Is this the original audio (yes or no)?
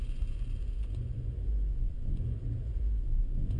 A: no